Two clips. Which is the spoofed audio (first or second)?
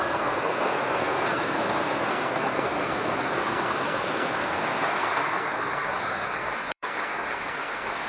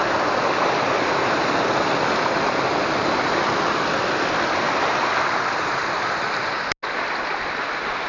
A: first